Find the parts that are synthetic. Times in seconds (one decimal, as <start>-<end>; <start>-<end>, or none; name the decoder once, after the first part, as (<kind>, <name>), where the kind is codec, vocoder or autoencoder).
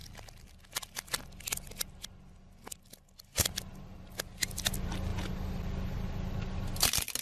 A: none